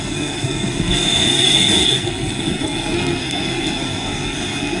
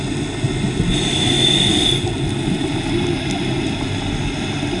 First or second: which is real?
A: second